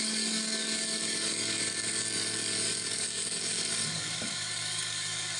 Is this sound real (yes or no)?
no